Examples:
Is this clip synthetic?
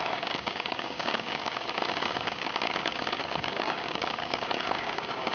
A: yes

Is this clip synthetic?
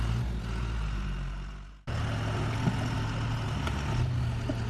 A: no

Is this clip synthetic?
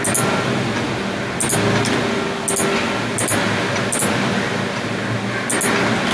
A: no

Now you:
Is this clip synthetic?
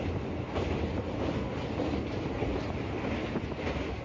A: no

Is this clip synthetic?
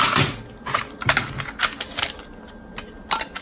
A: no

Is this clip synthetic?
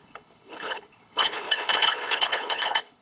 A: yes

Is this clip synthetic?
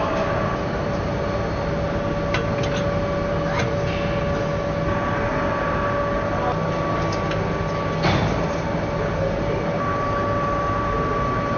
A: no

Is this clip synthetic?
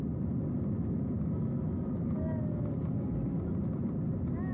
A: no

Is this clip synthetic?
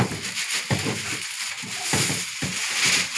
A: no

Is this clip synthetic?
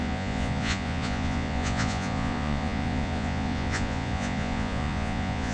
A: yes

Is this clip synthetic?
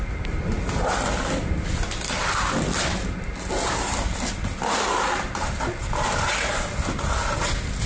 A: no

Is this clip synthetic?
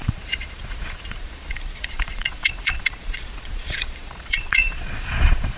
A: yes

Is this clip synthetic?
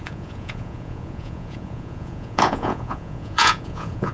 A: yes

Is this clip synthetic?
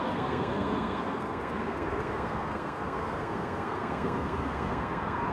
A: yes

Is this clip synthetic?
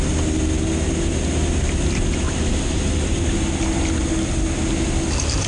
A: no